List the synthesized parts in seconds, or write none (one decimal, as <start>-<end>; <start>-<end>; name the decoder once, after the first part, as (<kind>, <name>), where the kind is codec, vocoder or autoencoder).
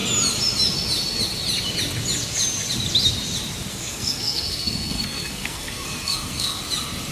3.7-6.6 (codec, SNAC)